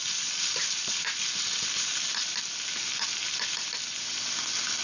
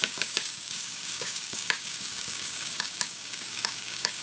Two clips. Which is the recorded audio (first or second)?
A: first